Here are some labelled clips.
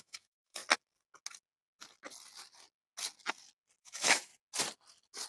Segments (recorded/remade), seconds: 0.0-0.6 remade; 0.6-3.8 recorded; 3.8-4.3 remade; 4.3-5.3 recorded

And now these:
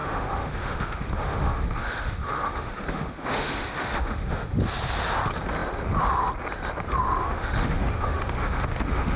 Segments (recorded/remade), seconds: 0.0-4.6 remade; 4.6-7.2 recorded; 7.2-9.2 remade

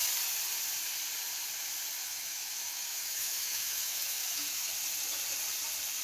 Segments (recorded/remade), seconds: 0.0-2.0 recorded; 2.0-4.7 remade; 4.7-6.0 recorded